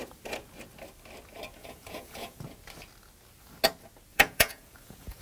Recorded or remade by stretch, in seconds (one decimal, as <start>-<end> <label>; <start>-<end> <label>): 0.0-1.6 recorded; 1.6-2.4 remade; 2.4-4.1 recorded; 4.1-5.2 remade